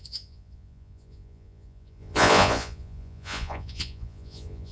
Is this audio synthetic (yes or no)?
yes